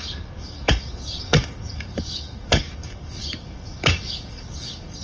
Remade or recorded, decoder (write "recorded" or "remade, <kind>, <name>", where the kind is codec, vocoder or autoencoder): remade, codec, DAC